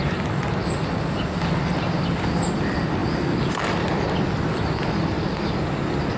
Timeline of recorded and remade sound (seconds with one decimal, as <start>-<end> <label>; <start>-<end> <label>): 0.0-6.2 recorded